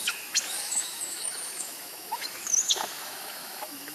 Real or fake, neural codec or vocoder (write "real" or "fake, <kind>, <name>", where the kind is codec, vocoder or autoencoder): fake, autoencoder, DAC-VAE